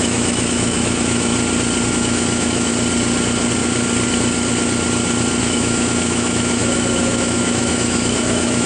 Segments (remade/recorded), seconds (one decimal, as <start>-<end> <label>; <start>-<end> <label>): 0.0-1.3 remade; 1.3-1.9 recorded; 1.9-2.7 remade; 2.7-5.4 recorded; 5.4-8.7 remade